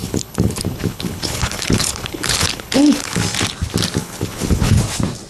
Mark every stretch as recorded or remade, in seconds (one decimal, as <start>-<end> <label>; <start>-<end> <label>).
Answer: 0.0-3.2 remade; 3.2-4.0 recorded; 4.0-4.8 remade; 4.8-5.3 recorded